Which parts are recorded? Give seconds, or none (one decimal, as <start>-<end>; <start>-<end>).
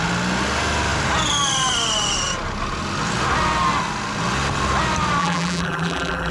0.0-5.2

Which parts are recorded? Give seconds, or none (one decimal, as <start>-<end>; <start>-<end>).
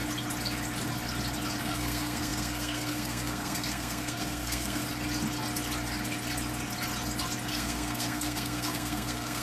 0.0-1.6; 4.8-7.5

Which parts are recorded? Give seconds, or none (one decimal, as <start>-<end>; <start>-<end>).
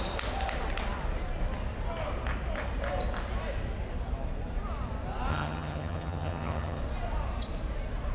0.0-5.3; 6.8-8.1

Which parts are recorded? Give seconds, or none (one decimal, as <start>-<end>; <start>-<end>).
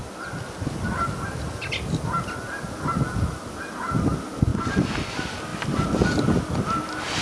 0.0-7.2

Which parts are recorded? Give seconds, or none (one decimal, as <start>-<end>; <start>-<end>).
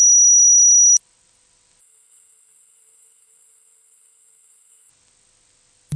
0.0-1.8; 4.9-6.0